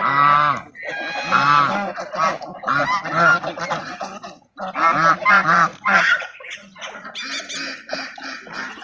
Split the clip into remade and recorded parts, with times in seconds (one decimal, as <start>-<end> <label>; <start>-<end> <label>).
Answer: 0.0-5.7 recorded; 5.7-7.1 remade; 7.1-8.8 recorded